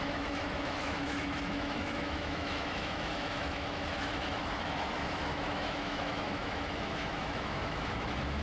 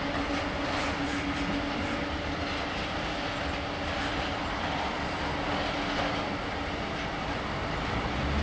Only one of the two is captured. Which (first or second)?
second